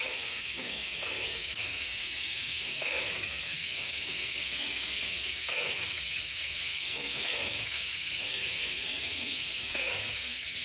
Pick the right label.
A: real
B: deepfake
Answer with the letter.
B